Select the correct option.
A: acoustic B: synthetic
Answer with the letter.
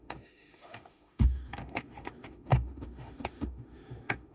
B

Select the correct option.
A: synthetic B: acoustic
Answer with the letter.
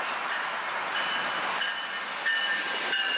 B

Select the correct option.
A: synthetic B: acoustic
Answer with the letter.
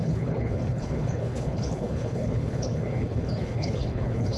A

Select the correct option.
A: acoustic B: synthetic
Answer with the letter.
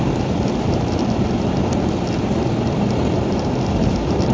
B